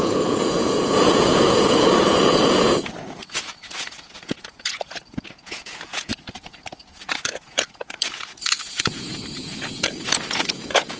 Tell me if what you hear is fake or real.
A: fake